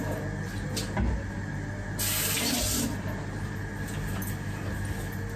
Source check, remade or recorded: recorded